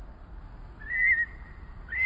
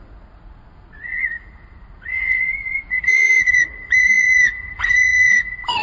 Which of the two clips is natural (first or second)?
first